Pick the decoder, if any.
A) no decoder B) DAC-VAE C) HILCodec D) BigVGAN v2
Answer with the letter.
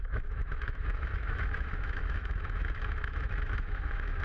B